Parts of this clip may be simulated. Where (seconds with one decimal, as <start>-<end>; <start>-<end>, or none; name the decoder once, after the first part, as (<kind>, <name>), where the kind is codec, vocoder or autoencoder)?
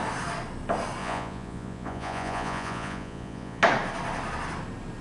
1.0-3.6 (vocoder, Vocos)